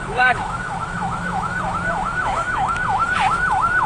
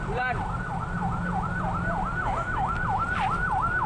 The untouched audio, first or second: second